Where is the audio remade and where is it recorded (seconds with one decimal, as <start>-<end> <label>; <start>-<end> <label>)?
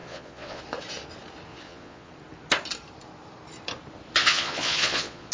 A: 0.0-0.6 remade; 0.6-1.5 recorded; 1.5-2.1 remade; 2.1-4.2 recorded; 4.2-5.3 remade